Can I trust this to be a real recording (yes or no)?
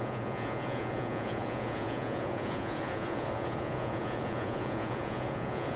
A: no